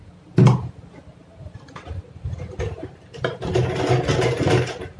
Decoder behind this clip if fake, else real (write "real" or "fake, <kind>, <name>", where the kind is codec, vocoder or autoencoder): real